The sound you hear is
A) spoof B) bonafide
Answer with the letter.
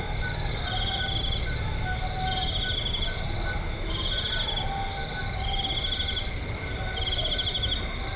B